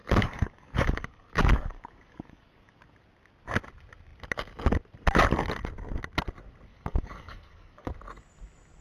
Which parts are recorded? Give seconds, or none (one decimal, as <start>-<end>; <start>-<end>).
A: 2.8-6.7; 7.9-8.8